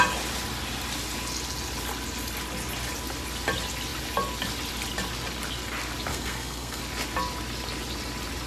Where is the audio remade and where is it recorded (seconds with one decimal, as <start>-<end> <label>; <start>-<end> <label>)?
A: 0.0-6.1 recorded; 6.1-6.8 remade; 6.8-8.5 recorded